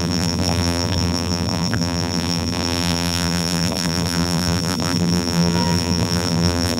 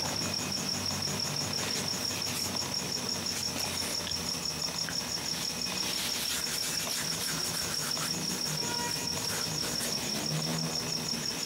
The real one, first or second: second